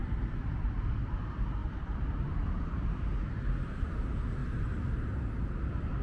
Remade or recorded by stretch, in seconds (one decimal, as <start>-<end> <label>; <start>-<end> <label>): 0.0-0.5 remade; 0.5-1.6 recorded; 1.6-2.9 remade; 2.9-4.4 recorded; 4.4-6.0 remade